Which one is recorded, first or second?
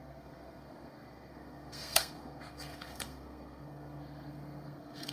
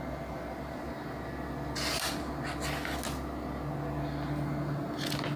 second